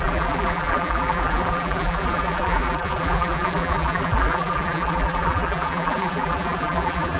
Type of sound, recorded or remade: remade